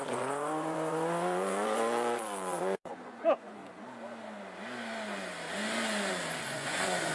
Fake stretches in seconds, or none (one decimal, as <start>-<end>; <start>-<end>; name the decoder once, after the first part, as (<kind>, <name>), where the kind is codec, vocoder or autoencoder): 0.0-3.6 (vocoder, Vocos); 6.1-7.1